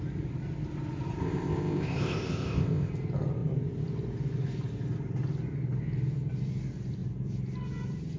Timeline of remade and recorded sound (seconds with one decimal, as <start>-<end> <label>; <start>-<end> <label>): 0.0-1.2 recorded; 1.2-2.9 remade; 2.9-8.2 recorded